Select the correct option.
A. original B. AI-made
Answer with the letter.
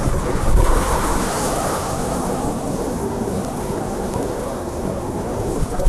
B